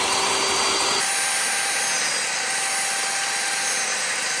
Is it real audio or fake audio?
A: real